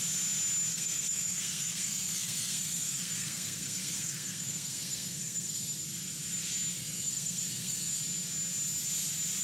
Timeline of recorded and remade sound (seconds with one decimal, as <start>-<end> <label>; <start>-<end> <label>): 0.0-0.7 recorded; 0.7-5.6 remade; 5.6-6.8 recorded; 6.8-8.0 remade; 8.0-9.4 recorded